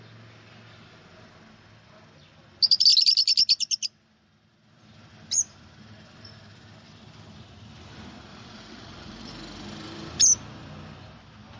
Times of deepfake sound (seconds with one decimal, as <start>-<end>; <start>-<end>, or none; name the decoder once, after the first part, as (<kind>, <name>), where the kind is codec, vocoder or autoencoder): 8.3-9.3 (vocoder, Vocos)